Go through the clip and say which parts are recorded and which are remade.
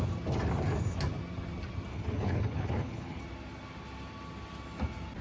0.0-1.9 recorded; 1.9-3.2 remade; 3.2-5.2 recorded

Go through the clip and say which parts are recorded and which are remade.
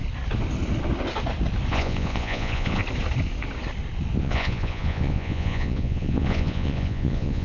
0.0-1.7 recorded; 1.7-2.8 remade; 2.8-4.2 recorded; 4.2-7.4 remade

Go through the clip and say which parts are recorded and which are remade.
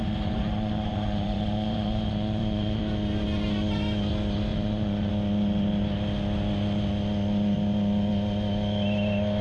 0.0-2.8 remade; 2.8-4.5 recorded; 4.5-5.1 remade; 5.1-9.4 recorded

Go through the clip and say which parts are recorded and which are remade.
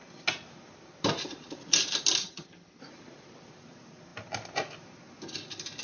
0.0-2.2 recorded; 2.2-2.8 remade; 2.8-5.8 recorded